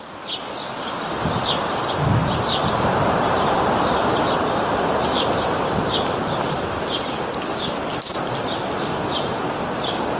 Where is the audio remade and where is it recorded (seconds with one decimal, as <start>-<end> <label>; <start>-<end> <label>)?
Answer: 0.0-2.2 recorded; 2.2-7.0 remade; 7.0-7.5 recorded; 7.5-8.2 remade; 8.2-10.2 recorded